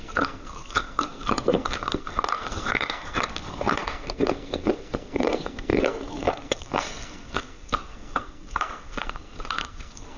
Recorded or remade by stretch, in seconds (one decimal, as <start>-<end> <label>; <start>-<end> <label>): 0.0-10.2 remade